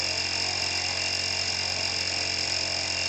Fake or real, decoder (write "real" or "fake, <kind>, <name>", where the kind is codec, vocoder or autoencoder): real